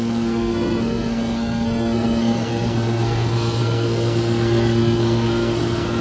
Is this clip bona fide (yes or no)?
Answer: no